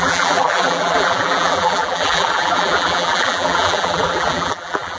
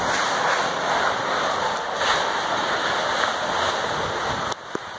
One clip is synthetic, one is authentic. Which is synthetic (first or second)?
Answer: first